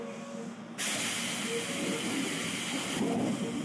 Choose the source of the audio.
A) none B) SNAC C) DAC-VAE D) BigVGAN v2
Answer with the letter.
A